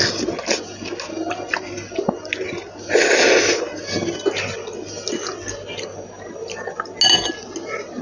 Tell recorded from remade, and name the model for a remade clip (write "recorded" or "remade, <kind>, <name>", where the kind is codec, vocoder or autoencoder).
recorded